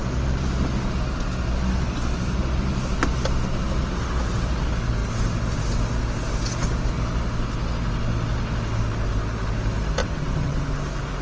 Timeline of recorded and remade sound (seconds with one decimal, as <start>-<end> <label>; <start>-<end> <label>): 0.0-10.0 recorded; 10.0-10.6 remade; 10.6-11.2 recorded